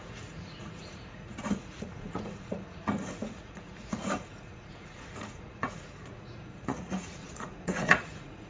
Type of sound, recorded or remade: remade